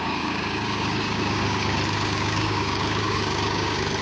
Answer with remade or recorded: remade